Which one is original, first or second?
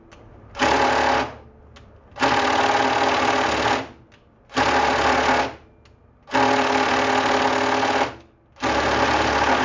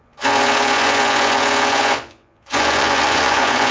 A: first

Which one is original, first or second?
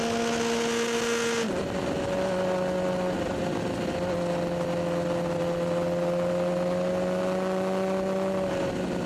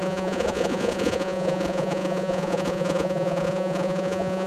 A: first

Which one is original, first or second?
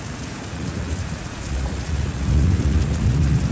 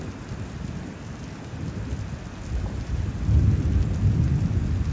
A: second